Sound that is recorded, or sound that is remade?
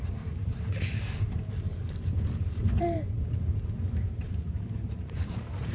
remade